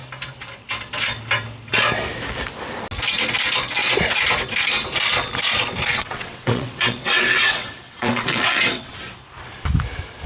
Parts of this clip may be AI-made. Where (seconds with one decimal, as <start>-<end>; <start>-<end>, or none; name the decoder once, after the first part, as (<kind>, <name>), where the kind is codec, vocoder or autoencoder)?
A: 5.9-8.9 (vocoder, WaveNeXt)